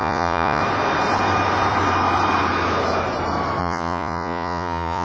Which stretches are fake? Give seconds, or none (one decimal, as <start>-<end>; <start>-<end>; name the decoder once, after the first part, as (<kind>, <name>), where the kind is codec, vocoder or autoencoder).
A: 0.0-0.6 (vocoder, Vocos); 3.6-5.0